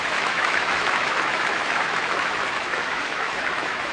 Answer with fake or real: fake